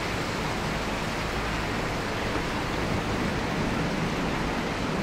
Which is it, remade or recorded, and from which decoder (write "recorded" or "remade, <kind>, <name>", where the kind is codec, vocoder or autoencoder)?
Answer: recorded